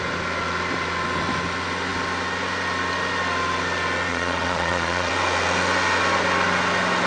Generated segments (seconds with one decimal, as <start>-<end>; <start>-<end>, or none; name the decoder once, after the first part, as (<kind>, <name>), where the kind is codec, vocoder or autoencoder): 4.1-5.1 (vocoder, Vocos)